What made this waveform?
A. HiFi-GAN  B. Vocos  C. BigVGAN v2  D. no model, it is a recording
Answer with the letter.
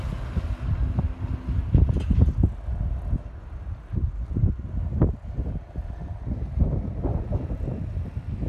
D